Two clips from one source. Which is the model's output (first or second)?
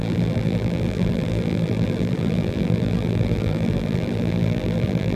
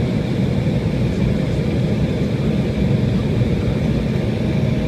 first